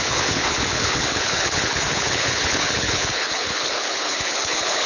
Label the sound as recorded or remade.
remade